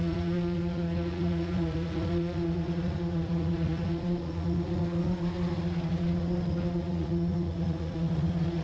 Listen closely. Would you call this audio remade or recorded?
remade